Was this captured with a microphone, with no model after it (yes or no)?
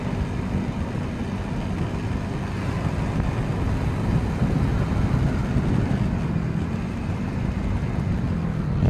yes